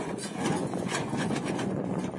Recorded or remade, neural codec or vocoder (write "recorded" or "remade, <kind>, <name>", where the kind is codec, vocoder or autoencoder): remade, vocoder, Vocos